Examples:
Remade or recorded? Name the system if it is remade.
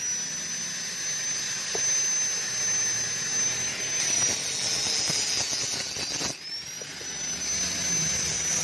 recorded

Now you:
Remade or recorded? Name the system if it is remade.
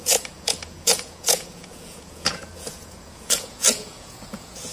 remade, vocoder, Vocos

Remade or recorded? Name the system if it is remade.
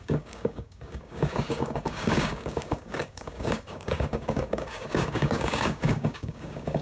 remade, codec, DAC